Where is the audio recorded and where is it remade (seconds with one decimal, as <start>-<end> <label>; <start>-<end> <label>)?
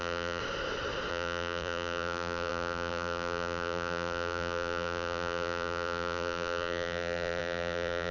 0.0-0.4 remade; 0.4-1.1 recorded; 1.1-8.1 remade